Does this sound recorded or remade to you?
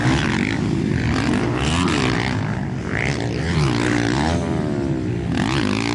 recorded